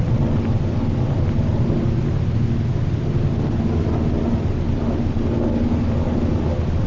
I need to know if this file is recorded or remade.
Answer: recorded